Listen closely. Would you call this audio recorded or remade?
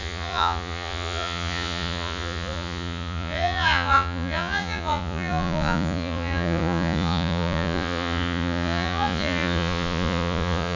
remade